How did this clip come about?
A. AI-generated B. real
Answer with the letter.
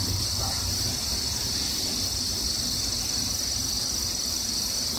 B